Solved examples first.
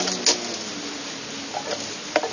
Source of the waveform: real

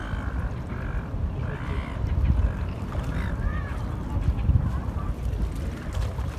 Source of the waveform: real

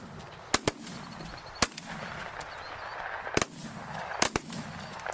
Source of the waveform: real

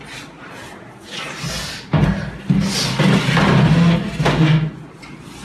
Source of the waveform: real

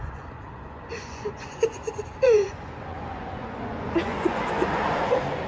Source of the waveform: fake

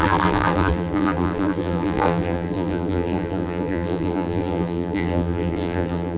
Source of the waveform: fake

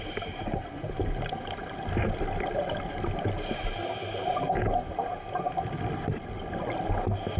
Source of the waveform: real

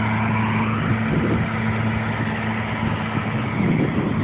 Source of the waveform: real